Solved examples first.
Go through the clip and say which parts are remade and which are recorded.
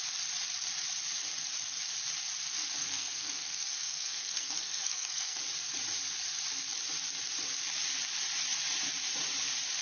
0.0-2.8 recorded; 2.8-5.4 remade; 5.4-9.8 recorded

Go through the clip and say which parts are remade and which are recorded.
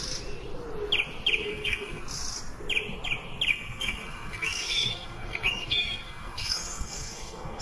0.0-1.4 recorded; 1.4-2.0 remade; 2.0-3.5 recorded; 3.5-7.6 remade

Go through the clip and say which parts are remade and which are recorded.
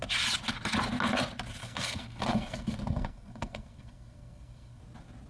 0.0-1.6 recorded; 1.6-4.8 remade; 4.8-5.3 recorded